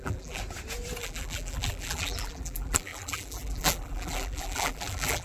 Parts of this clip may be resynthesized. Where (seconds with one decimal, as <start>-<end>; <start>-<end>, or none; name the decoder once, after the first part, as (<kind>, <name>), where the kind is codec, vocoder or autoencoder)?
0.0-0.4 (vocoder, BigVGAN v2); 1.0-5.2